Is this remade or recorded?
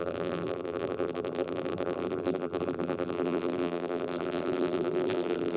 remade